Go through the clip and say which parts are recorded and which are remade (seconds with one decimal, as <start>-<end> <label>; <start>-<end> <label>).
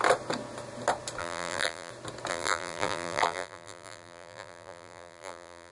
0.0-1.2 recorded; 1.2-1.9 remade; 1.9-2.3 recorded; 2.3-5.7 remade